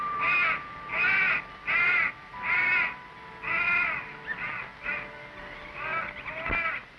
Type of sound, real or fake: real